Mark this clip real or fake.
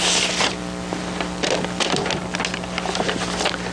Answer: real